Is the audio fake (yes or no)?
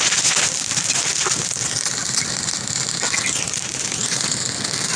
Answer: no